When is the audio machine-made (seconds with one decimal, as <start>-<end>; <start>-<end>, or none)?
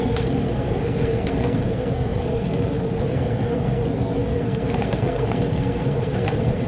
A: 0.0-6.7